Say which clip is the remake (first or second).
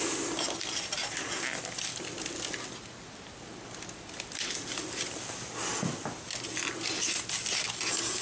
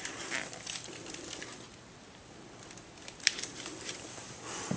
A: second